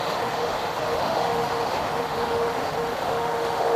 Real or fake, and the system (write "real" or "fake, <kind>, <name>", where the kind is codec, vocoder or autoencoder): fake, autoencoder, DAC-VAE